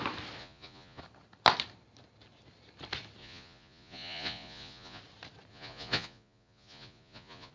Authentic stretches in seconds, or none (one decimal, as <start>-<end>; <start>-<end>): 0.0-0.4; 1.0-3.2; 5.0-5.5